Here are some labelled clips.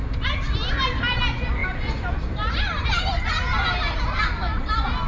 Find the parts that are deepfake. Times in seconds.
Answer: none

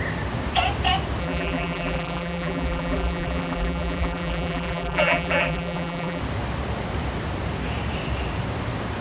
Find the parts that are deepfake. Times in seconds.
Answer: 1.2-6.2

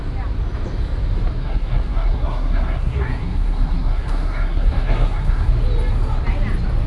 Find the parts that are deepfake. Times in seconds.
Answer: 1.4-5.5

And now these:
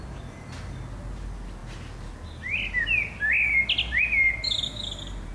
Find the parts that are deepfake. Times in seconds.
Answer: none

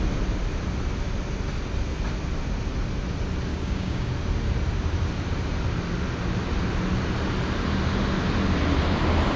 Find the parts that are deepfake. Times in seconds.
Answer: 3.5-4.1